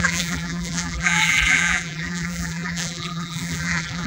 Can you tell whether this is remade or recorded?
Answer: remade